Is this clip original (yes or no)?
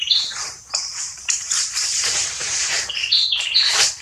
no